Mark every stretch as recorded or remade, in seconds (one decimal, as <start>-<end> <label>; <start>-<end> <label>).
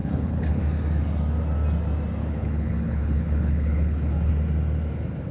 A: 0.0-0.6 remade; 0.6-2.2 recorded; 2.2-4.3 remade; 4.3-5.3 recorded